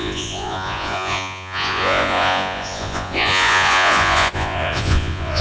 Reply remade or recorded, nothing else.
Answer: remade